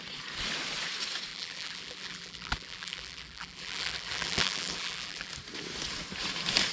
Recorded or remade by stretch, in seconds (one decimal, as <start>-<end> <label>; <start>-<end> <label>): 0.0-1.3 recorded; 1.3-5.3 remade; 5.3-6.7 recorded